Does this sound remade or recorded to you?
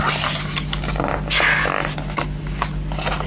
recorded